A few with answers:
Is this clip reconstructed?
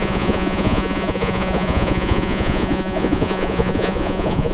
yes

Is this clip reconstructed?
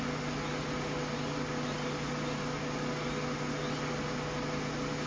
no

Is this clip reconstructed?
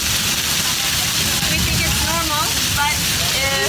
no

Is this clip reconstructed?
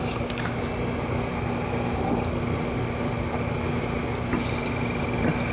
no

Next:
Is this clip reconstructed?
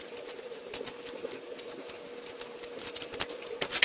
no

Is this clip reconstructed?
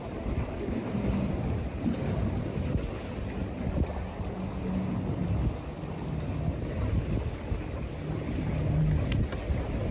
no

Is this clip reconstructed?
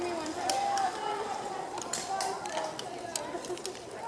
no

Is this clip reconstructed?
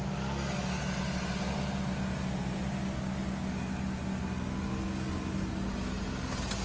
no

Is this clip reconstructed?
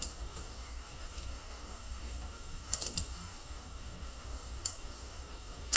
yes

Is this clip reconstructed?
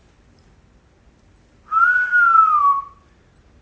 no